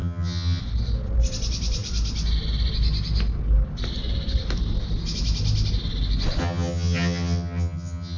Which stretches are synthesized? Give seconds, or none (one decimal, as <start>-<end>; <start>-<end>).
0.0-0.6; 6.4-8.2